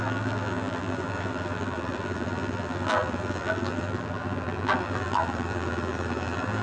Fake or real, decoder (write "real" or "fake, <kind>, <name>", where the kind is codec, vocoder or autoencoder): fake, vocoder, BigVGAN v2